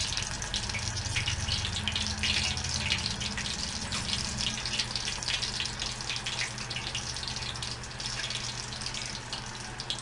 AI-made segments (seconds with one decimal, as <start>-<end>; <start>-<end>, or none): none